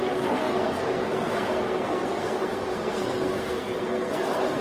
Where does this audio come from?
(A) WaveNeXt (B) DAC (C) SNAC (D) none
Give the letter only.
C